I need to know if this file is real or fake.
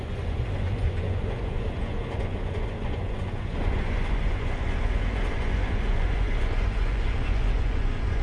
fake